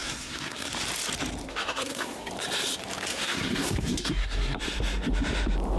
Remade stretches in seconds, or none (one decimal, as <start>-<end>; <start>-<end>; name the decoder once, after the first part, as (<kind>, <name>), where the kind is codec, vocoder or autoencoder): 0.0-0.7 (codec, SNAC); 1.4-2.3; 3.1-4.6